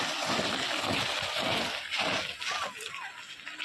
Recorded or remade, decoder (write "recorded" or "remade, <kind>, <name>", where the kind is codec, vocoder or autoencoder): recorded